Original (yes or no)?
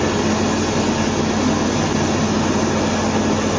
yes